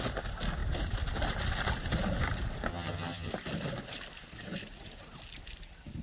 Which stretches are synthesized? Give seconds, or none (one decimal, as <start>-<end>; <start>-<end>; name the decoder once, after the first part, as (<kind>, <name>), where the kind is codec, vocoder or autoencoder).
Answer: 2.7-3.3 (vocoder, HiFi-GAN)